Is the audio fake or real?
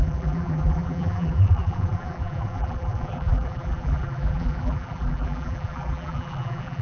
fake